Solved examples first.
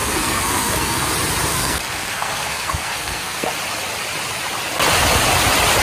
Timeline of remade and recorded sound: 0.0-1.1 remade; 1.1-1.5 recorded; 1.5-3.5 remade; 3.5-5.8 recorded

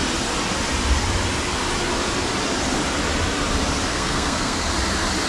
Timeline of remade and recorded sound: 0.0-3.9 recorded; 3.9-4.7 remade; 4.7-5.3 recorded

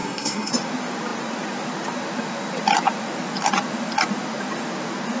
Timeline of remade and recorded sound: 0.0-0.5 remade; 0.5-5.2 recorded

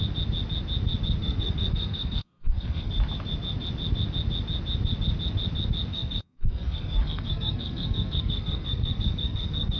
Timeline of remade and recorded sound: 0.0-1.2 recorded; 1.2-2.9 remade; 2.9-5.9 recorded; 5.9-9.8 remade